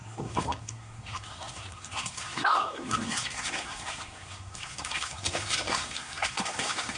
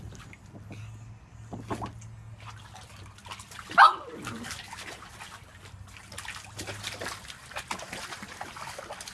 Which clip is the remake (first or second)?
first